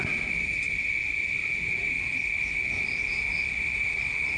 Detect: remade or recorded recorded